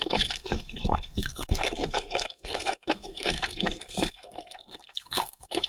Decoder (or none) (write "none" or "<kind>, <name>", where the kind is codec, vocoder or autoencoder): codec, SNAC